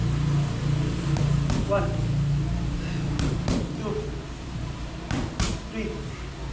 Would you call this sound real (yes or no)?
yes